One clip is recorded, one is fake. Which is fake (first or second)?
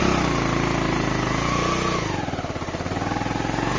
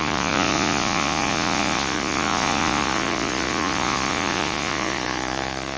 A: second